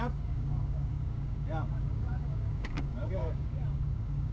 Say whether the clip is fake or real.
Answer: fake